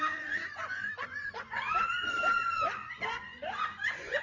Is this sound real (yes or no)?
no